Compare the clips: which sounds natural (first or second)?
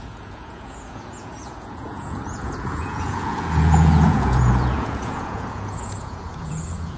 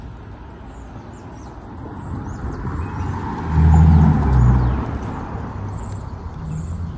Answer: second